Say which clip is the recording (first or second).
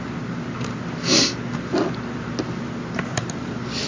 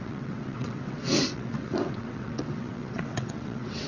first